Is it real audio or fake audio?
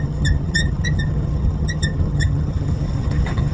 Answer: fake